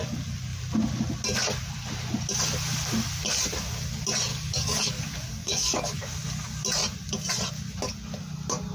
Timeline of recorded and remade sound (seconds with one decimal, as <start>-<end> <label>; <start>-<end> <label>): 0.0-4.3 recorded; 4.3-5.0 remade; 5.0-5.4 recorded; 5.4-6.0 remade; 6.0-8.7 recorded